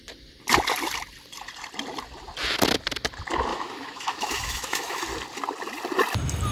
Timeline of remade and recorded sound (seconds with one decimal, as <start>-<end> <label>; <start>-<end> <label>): 0.0-3.5 recorded; 3.5-5.0 remade; 5.0-6.5 recorded